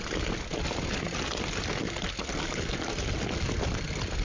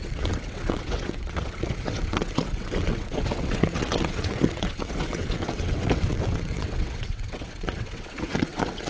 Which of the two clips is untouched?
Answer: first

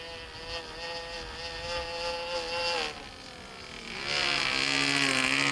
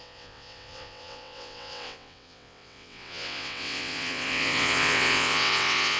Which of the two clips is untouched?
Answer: first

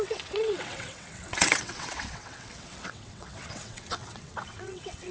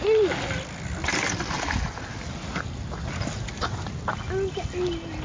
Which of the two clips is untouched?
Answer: second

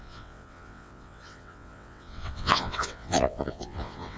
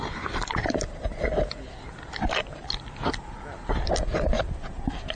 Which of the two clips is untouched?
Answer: second